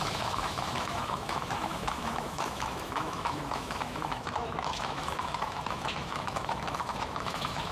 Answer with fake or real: fake